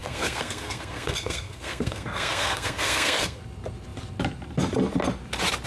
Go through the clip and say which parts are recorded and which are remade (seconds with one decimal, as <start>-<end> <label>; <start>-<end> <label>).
0.0-3.4 remade; 3.4-5.7 recorded